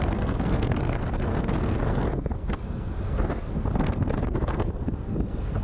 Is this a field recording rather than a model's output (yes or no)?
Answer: no